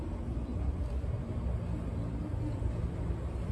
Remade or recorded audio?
recorded